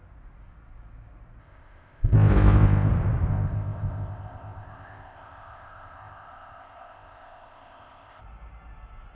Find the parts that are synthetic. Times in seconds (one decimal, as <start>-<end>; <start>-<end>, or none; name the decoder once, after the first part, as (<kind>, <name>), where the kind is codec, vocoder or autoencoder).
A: 1.4-2.9 (codec, ZipCodec); 3.3-8.2

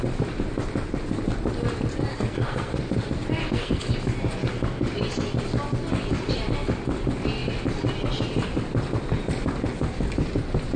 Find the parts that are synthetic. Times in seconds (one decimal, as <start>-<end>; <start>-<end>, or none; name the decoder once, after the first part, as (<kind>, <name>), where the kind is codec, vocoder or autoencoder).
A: 2.1-2.8 (codec, SNAC); 3.4-3.9